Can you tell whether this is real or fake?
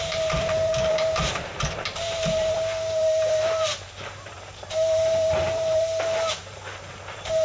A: fake